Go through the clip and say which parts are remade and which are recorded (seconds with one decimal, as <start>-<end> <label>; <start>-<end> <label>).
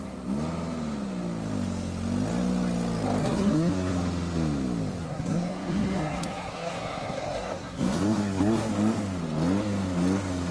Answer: 0.0-3.2 recorded; 3.2-3.9 remade; 3.9-5.0 recorded; 5.0-8.7 remade; 8.7-10.5 recorded